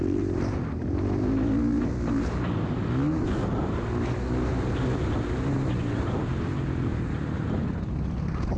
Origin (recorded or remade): recorded